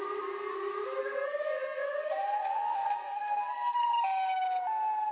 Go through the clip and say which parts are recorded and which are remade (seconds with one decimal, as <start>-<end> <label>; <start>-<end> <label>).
0.0-1.0 recorded; 1.0-3.9 remade; 3.9-5.1 recorded